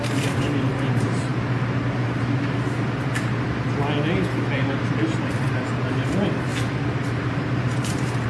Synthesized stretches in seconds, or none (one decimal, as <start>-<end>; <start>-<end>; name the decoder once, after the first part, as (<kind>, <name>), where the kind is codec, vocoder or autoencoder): 0.0-1.3 (vocoder, BigVGAN v2); 5.5-6.5; 7.2-8.3